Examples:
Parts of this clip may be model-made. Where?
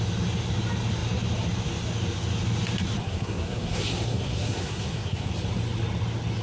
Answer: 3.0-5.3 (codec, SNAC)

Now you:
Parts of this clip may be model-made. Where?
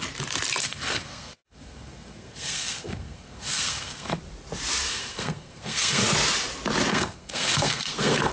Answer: 0.6-4.2 (codec, SNAC); 4.9-6.0; 6.9-8.3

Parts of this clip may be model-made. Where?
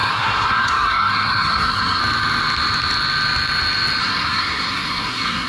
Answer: 0.0-2.0 (codec, SNAC); 4.0-5.5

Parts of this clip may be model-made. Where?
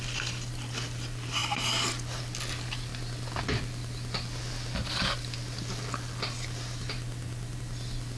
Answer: none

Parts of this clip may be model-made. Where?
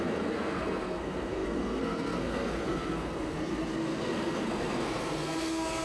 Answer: 0.0-5.8 (codec, SNAC)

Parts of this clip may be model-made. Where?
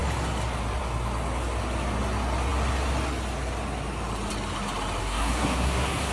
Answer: 5.0-6.1 (codec, SNAC)